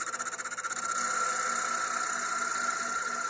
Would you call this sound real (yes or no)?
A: yes